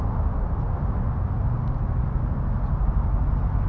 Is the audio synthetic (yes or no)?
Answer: no